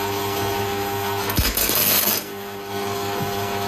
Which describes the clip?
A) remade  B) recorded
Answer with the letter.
A